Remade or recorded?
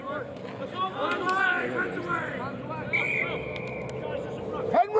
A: recorded